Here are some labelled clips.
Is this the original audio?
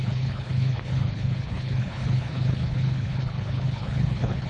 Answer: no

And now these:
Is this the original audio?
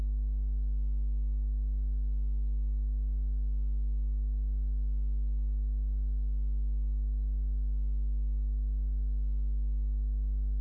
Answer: yes